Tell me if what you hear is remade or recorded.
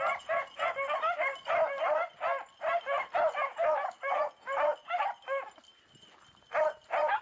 recorded